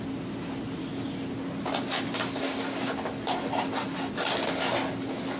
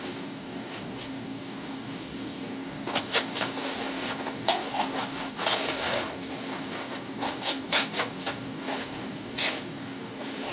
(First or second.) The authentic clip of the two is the first